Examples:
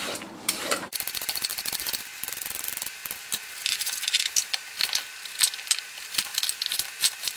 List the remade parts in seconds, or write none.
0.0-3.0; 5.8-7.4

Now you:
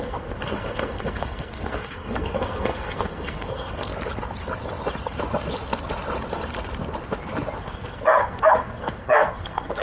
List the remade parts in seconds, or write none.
0.0-3.9; 7.6-9.8

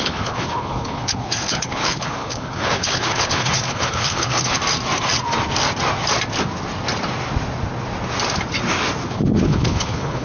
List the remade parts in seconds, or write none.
0.0-4.6; 9.1-10.2

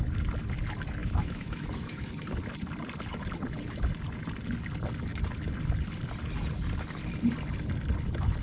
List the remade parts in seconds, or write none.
1.0-2.1